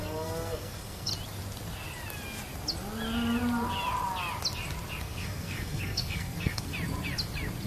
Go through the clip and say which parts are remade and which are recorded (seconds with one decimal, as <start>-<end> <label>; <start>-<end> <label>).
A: 0.0-1.1 remade; 1.1-5.0 recorded; 5.0-6.7 remade; 6.7-7.7 recorded